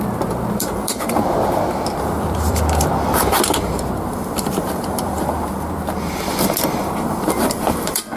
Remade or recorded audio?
remade